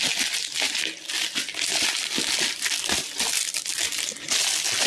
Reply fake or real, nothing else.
real